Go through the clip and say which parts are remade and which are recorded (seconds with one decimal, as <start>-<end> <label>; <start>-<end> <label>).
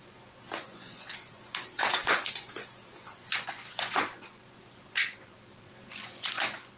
0.0-6.8 remade